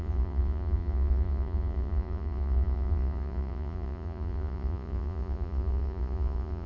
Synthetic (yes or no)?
yes